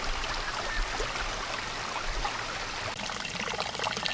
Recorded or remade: recorded